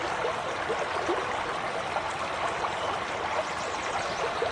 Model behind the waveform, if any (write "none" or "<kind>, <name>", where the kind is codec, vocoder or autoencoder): none